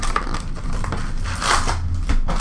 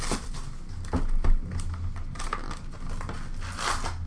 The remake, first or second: first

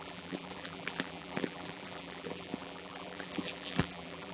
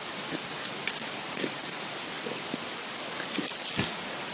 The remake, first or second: first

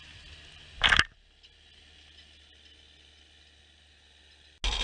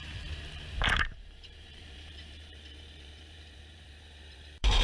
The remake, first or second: second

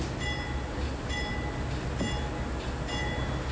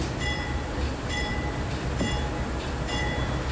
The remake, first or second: second